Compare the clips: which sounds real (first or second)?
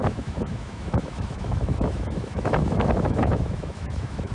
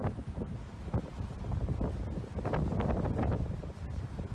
second